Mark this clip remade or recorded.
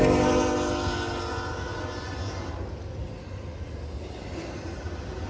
recorded